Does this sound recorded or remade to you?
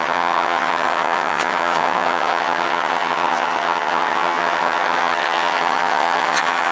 remade